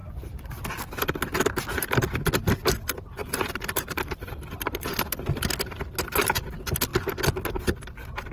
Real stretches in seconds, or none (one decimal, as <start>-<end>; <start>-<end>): 0.6-3.2; 5.0-8.3